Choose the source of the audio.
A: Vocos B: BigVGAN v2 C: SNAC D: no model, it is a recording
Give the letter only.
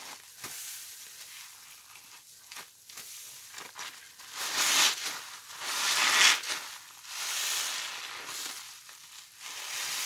D